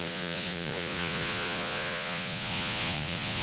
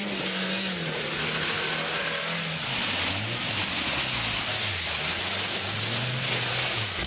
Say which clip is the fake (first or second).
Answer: first